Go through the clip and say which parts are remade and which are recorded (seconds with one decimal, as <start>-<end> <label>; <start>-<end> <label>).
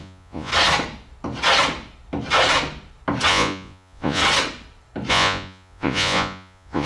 0.0-0.5 remade; 0.5-3.3 recorded; 3.3-4.2 remade; 4.2-5.1 recorded; 5.1-6.9 remade